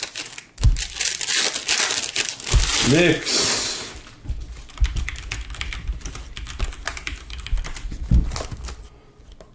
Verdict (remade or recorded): recorded